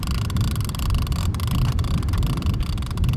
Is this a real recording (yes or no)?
yes